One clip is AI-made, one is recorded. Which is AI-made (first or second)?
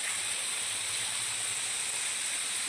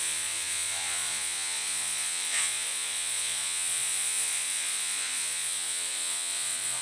second